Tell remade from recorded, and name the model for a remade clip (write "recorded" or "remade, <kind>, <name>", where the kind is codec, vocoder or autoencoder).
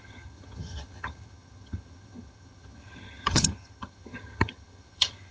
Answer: remade, vocoder, HiFi-GAN